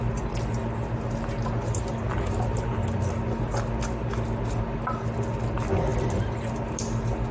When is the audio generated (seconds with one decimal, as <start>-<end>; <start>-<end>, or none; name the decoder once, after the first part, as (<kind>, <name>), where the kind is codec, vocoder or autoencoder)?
none